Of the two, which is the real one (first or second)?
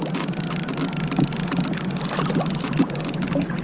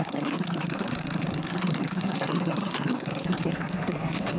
first